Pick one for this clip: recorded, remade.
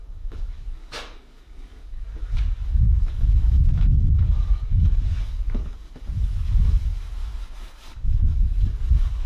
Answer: remade